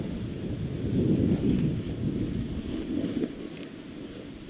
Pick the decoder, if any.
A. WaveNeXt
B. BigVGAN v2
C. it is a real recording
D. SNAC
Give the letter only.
C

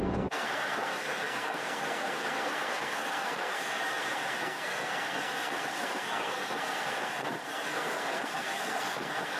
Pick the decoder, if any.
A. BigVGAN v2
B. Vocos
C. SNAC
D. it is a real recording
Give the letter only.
C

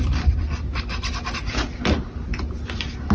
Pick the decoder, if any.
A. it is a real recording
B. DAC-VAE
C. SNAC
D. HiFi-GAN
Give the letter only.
A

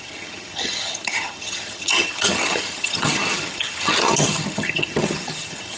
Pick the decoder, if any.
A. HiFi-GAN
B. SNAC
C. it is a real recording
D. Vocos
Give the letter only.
A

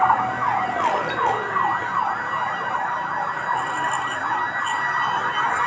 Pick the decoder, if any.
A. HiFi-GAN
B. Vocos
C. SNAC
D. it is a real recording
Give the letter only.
D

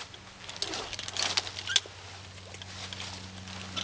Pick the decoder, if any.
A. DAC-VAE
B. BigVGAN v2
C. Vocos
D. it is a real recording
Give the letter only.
D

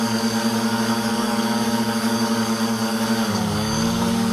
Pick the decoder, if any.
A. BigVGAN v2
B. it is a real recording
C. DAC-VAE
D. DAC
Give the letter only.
D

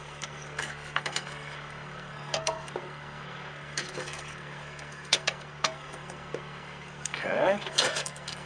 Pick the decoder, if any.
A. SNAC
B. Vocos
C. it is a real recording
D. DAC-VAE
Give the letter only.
A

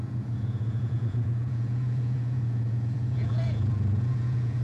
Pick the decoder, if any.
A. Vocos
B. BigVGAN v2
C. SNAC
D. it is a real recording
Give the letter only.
A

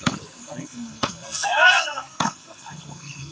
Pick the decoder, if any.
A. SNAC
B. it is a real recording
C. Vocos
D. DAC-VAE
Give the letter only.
A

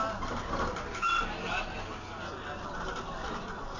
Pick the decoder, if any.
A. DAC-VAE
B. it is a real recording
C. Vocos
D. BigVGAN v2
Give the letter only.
B